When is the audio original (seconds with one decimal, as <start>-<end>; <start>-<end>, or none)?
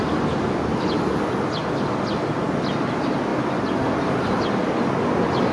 0.0-5.5